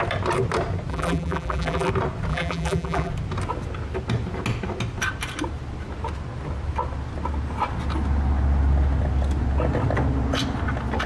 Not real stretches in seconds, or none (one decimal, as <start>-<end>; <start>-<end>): 0.9-1.9; 2.3-3.1